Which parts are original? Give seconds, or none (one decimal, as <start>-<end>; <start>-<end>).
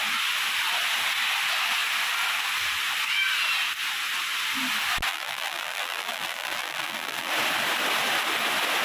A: 0.0-5.1; 7.3-8.8